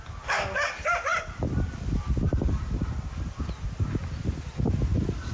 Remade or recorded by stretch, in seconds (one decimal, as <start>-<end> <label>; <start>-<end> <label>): 0.0-5.3 remade